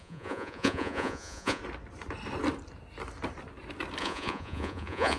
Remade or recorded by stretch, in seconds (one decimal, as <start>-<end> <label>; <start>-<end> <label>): 0.0-1.6 remade; 1.6-4.0 recorded; 4.0-5.2 remade